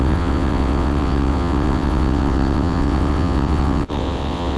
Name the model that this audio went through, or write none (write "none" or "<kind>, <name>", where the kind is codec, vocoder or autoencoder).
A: vocoder, WaveNeXt